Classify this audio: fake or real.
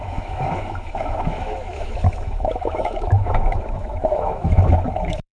fake